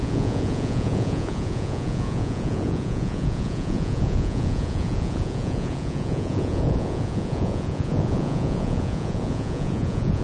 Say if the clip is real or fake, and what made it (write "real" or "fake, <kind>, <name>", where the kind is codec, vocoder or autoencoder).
fake, vocoder, Vocos